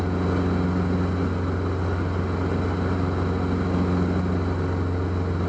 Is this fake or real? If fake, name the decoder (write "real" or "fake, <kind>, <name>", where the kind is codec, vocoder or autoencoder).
real